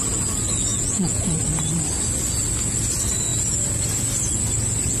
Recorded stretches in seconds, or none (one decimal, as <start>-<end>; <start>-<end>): 0.0-0.7; 1.4-5.0